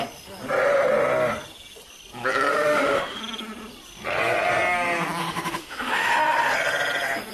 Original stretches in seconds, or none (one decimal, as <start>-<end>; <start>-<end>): 0.0-2.5; 3.2-5.2; 6.1-7.3